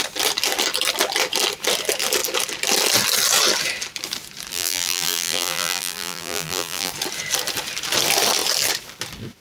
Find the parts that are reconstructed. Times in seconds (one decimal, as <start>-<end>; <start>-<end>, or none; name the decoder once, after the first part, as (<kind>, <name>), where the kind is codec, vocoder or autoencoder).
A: 4.5-6.9 (vocoder, BigVGAN v2)